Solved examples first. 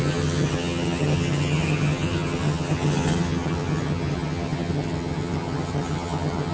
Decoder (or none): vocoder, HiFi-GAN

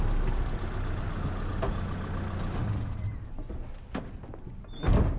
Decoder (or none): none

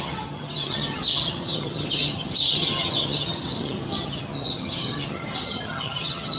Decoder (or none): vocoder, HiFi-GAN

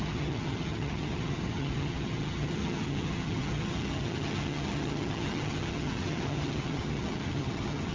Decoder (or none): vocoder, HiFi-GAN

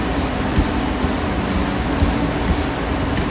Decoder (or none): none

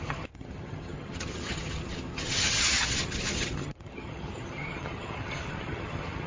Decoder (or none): vocoder, HiFi-GAN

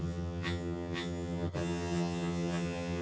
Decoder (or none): vocoder, HiFi-GAN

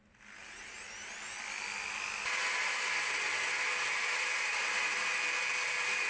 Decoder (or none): none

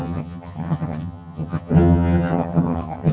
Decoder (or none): vocoder, HiFi-GAN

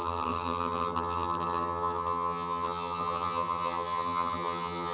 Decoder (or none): vocoder, HiFi-GAN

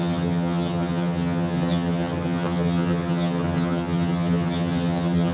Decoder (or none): vocoder, HiFi-GAN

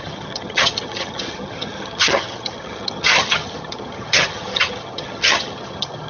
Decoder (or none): vocoder, HiFi-GAN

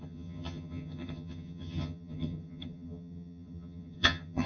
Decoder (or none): vocoder, HiFi-GAN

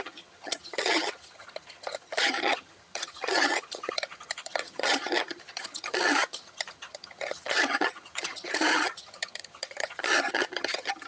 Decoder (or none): vocoder, HiFi-GAN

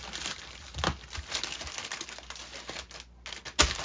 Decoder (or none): none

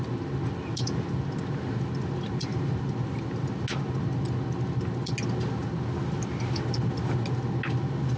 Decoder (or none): none